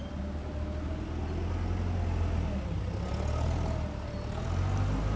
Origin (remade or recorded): recorded